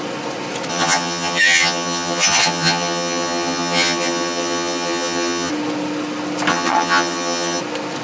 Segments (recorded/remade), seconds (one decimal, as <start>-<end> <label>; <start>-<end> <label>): 0.0-0.7 recorded; 0.7-5.5 remade; 5.5-6.5 recorded; 6.5-7.6 remade; 7.6-8.0 recorded